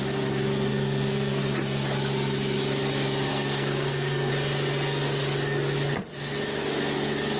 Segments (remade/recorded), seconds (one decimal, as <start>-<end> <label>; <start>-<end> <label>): 0.0-0.7 recorded; 0.7-1.4 remade; 1.4-3.3 recorded; 3.3-4.3 remade; 4.3-7.4 recorded